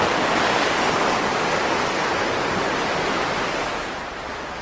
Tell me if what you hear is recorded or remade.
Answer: recorded